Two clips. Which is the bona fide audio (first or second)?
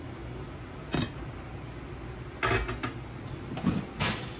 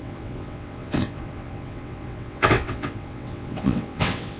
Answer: first